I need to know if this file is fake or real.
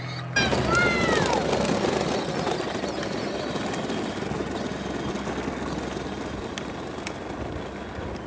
real